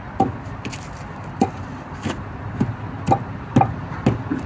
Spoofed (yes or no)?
no